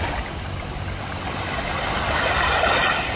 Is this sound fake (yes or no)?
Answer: no